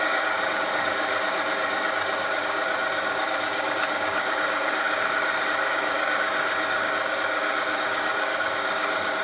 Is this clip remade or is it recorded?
remade